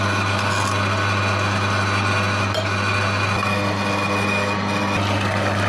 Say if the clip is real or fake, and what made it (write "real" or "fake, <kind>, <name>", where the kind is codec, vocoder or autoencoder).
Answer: real